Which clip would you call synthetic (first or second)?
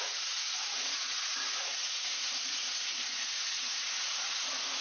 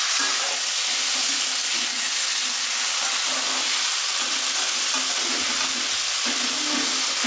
first